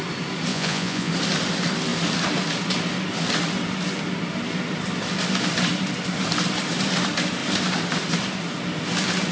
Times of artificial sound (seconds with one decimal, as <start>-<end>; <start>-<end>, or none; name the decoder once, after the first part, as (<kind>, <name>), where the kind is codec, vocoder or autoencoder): 0.5-1.1 (vocoder, Vocos)